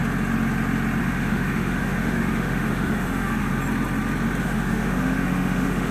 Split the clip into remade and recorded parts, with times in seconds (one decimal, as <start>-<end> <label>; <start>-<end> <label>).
0.0-1.0 recorded; 1.0-3.5 remade; 3.5-4.4 recorded; 4.4-5.9 remade